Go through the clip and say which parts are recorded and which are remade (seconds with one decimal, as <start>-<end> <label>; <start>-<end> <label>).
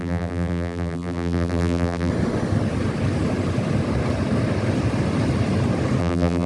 0.0-2.1 remade; 2.1-6.0 recorded; 6.0-6.5 remade